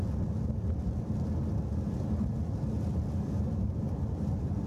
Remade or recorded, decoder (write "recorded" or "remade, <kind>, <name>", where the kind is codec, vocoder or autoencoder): recorded